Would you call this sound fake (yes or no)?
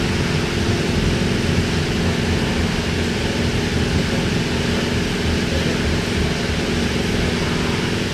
no